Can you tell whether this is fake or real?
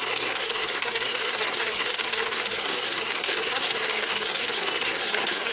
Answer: fake